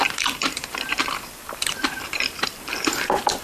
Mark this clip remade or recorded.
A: remade